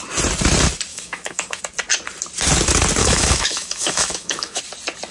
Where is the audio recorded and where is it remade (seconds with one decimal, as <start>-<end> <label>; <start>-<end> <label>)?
0.0-0.9 recorded; 0.9-1.6 remade; 1.6-3.0 recorded; 3.0-4.6 remade; 4.6-5.1 recorded